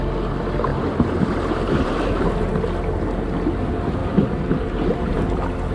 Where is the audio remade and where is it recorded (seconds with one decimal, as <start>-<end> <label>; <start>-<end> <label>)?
0.0-0.7 recorded; 0.7-2.5 remade; 2.5-4.0 recorded; 4.0-5.2 remade; 5.2-5.7 recorded